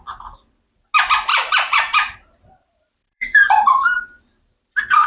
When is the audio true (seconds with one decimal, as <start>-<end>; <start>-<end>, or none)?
0.0-1.3; 4.4-5.1